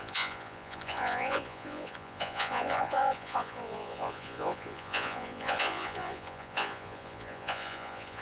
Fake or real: fake